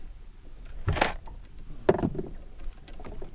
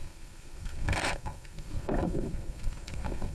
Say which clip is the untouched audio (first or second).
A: first